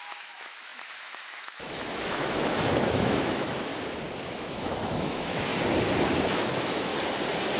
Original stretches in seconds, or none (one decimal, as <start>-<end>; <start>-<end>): 3.7-4.3; 5.5-6.3; 6.9-7.6